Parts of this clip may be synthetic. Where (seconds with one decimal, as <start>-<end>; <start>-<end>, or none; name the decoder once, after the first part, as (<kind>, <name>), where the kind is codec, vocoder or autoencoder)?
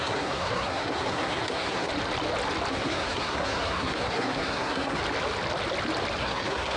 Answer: 0.0-1.9 (codec, SNAC); 2.7-5.0; 6.2-6.8